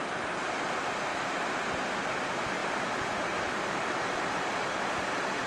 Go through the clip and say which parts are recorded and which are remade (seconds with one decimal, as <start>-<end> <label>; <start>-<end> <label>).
0.0-5.5 recorded